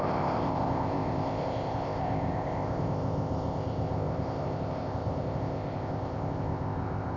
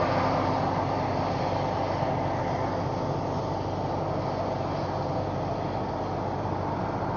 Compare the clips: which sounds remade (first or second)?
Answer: first